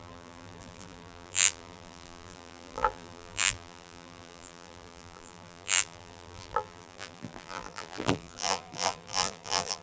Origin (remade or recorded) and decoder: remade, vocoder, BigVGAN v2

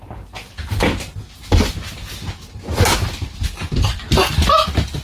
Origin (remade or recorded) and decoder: recorded